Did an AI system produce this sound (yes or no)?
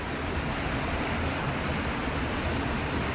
no